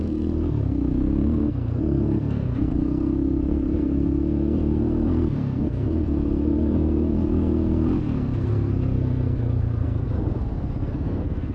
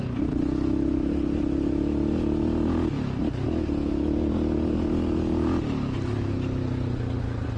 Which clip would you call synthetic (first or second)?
first